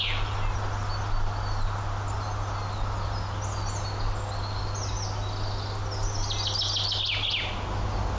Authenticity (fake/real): real